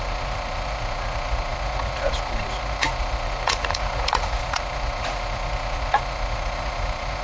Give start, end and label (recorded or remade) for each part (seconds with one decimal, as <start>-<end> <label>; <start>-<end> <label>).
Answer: 0.0-7.2 remade